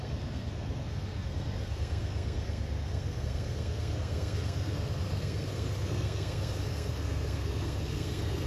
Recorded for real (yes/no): no